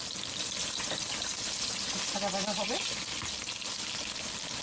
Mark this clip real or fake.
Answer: real